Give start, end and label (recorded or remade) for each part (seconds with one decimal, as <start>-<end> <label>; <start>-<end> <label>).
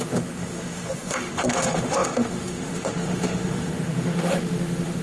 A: 0.0-5.0 remade